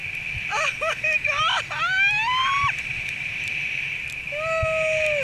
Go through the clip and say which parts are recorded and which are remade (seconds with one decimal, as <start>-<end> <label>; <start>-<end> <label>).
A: 0.0-2.4 recorded; 2.4-3.5 remade; 3.5-5.2 recorded